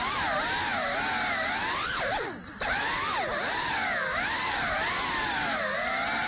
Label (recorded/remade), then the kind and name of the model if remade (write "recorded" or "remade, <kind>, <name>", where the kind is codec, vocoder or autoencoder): recorded